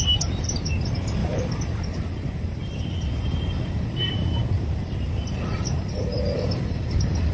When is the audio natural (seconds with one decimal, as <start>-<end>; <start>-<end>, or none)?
0.0-1.2; 1.8-7.3